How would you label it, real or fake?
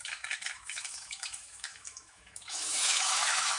fake